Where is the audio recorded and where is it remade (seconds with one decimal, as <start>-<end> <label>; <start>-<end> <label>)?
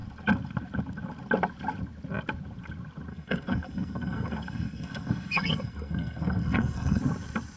0.0-3.1 recorded; 3.1-7.0 remade; 7.0-7.6 recorded